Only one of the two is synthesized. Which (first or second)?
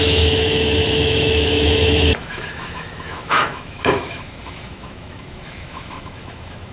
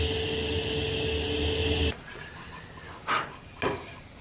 first